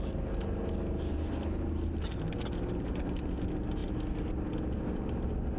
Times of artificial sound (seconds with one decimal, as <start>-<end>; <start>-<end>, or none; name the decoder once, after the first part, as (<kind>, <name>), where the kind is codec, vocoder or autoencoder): none

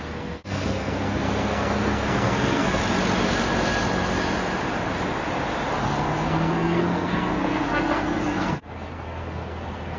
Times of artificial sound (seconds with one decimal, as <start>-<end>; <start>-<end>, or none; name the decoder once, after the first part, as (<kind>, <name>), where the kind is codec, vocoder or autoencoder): 0.0-2.8 (codec, SNAC); 5.8-10.0

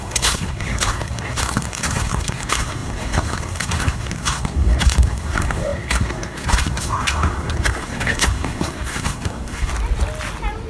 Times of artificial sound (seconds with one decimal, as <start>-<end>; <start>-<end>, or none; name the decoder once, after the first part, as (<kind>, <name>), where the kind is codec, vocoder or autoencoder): 0.0-9.7 (codec, SNAC)

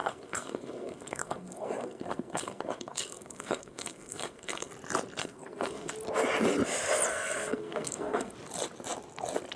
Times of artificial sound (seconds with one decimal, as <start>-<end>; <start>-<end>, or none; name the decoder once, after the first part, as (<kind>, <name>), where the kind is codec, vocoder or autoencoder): 0.0-4.7 (codec, SNAC); 5.2-5.9; 7.1-8.3

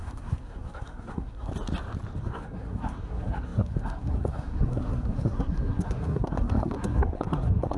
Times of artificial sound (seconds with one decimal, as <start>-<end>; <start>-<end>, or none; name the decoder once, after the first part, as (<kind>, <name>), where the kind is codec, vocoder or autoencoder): 0.0-1.5 (codec, SNAC); 2.2-7.8

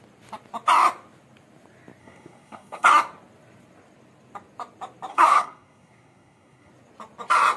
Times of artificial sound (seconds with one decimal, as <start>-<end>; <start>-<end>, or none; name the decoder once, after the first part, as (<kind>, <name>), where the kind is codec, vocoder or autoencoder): 2.0-2.9 (codec, SNAC); 5.1-6.7

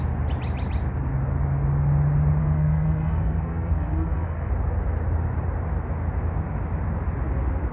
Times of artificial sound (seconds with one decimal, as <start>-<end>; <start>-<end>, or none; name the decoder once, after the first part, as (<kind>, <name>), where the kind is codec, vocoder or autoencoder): 2.4-4.5 (codec, SNAC)

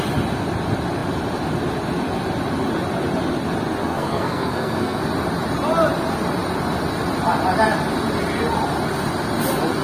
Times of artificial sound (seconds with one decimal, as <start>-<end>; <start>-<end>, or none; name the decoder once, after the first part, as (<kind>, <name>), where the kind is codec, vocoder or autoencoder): 3.8-5.0 (codec, SNAC)